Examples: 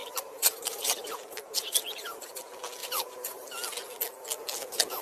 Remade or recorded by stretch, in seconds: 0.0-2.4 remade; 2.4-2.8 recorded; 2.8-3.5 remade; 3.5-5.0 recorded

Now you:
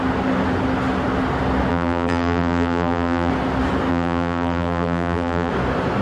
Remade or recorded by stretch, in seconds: 0.0-1.7 recorded; 1.7-3.3 remade; 3.3-3.9 recorded; 3.9-5.5 remade; 5.5-6.0 recorded

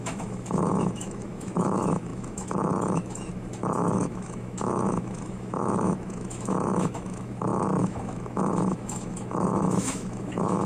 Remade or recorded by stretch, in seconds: 0.0-10.7 remade

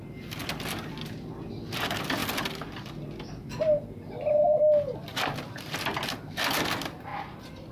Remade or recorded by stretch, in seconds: 0.0-0.4 recorded; 0.4-1.0 remade; 1.0-2.2 recorded; 2.2-2.9 remade; 2.9-5.1 recorded; 5.1-5.8 remade; 5.8-7.1 recorded; 7.1-7.7 remade

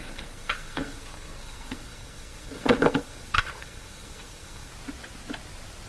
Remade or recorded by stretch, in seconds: 0.0-4.7 remade; 4.7-5.9 recorded

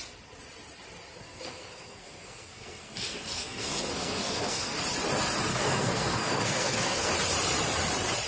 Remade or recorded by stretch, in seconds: 0.0-1.2 recorded; 1.2-4.8 remade; 4.8-5.5 recorded; 5.5-7.1 remade; 7.1-8.3 recorded

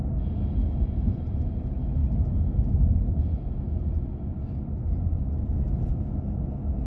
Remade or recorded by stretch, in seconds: 0.0-6.9 recorded

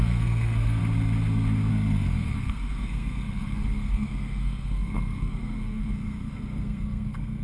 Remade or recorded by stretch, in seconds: 0.0-0.8 remade; 0.8-1.7 recorded; 1.7-7.4 remade